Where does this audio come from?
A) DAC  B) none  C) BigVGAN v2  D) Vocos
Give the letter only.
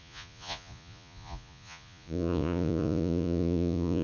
D